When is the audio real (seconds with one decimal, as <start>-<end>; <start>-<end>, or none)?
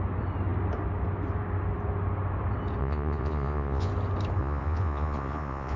0.0-2.8; 3.9-4.4